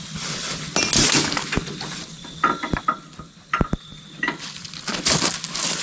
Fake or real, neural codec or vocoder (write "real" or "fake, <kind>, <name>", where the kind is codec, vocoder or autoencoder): real